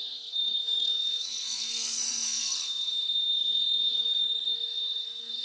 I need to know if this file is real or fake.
fake